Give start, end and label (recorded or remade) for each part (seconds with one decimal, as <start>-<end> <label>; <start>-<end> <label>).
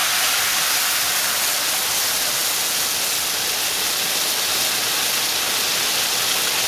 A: 0.0-6.7 recorded